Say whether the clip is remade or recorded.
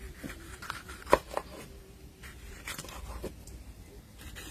recorded